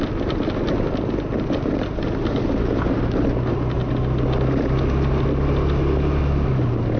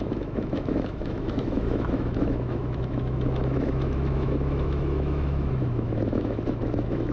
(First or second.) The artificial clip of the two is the second